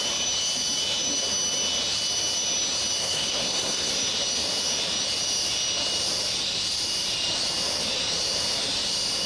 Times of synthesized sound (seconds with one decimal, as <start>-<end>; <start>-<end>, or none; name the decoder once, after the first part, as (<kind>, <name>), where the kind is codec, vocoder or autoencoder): 3.0-3.9 (codec, SNAC)